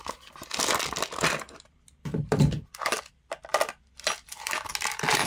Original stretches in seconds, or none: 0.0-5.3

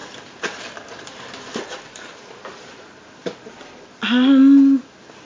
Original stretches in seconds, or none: 1.6-3.2; 3.9-5.3

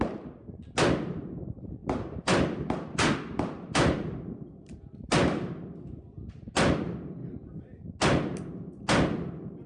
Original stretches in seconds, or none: 0.0-1.8; 5.1-9.7

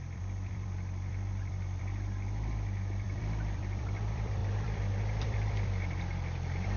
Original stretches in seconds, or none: none

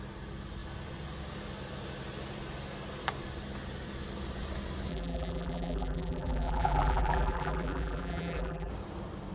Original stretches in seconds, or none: 0.0-4.9; 8.7-9.3

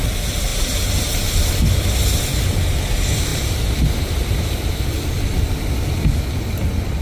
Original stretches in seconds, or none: 0.0-0.5; 1.5-3.3; 4.9-7.0

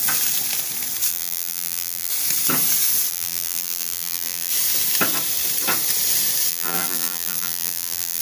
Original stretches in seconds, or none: 0.0-1.1; 2.1-3.1; 4.5-6.5

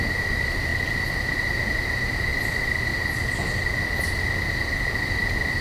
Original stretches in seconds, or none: 0.7-1.7; 2.3-5.6